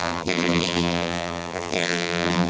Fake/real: fake